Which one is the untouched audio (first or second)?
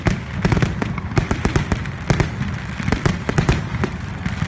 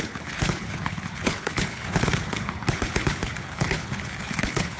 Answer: first